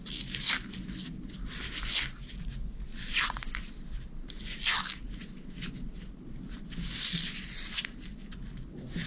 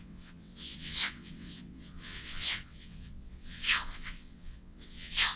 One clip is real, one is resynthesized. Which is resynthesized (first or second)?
second